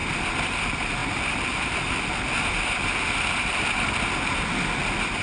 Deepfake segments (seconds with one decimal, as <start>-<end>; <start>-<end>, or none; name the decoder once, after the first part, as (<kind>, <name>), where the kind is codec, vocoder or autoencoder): 0.0-5.2 (vocoder, BigVGAN v2)